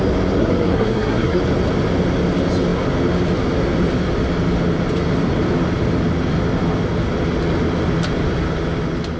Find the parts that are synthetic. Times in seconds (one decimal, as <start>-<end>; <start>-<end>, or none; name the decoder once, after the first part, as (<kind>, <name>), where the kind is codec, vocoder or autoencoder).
0.4-1.4 (codec, SNAC)